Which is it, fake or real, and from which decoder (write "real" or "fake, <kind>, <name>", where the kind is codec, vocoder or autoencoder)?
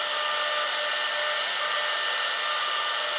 real